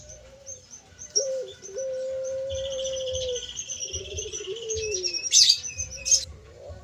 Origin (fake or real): fake